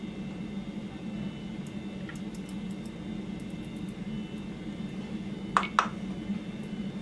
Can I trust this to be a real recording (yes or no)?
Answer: yes